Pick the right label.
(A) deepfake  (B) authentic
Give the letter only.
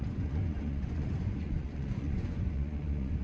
A